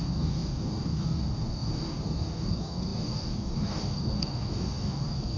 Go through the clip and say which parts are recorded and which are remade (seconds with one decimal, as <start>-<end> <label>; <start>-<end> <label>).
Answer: 0.0-5.4 remade